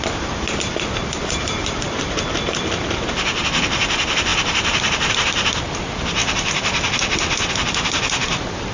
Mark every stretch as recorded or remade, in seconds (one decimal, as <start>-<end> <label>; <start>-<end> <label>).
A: 0.0-6.2 remade; 6.2-7.5 recorded; 7.5-8.7 remade